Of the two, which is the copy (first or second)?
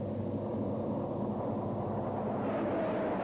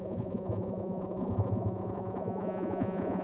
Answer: second